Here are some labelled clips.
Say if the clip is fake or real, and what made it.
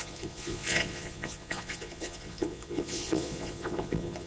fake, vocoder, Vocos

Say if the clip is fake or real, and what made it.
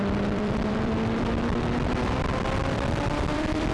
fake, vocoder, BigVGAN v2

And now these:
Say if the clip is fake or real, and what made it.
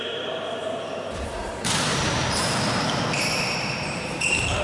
fake, vocoder, BigVGAN v2